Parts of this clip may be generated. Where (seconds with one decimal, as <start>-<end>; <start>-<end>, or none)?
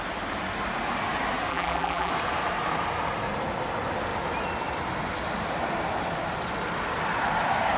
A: 1.5-2.1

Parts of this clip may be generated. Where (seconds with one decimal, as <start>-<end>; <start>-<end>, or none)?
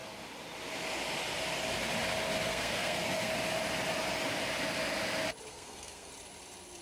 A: 2.5-3.3; 5.5-6.1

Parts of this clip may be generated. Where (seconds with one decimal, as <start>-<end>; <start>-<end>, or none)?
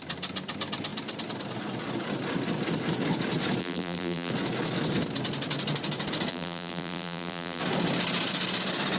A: 3.6-4.3; 6.3-7.6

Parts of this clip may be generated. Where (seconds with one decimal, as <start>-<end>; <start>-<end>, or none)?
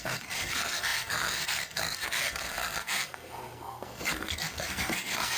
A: 0.0-5.4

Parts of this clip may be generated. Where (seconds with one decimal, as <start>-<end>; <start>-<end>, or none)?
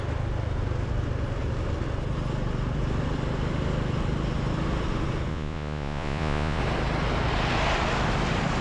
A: 5.3-6.6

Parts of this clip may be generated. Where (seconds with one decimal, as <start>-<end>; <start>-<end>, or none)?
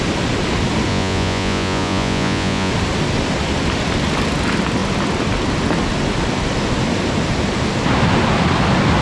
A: 0.9-2.7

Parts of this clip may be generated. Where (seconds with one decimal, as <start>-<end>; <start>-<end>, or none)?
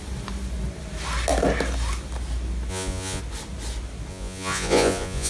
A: 2.7-3.2; 4.1-5.3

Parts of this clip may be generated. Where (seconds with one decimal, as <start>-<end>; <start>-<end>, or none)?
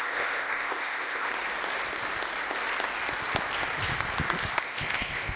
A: 0.0-1.3; 4.5-5.4